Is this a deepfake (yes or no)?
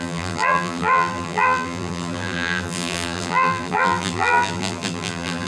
yes